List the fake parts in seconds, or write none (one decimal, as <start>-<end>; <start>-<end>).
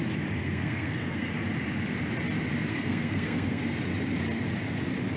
0.4-1.3; 2.7-3.6